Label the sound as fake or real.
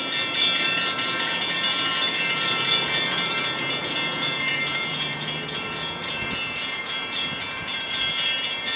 fake